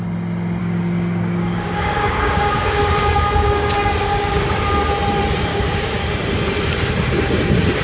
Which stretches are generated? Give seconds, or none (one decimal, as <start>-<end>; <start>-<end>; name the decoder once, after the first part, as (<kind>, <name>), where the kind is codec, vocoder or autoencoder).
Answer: 0.6-4.8 (codec, DAC); 5.5-6.1